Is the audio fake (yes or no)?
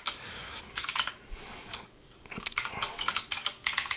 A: yes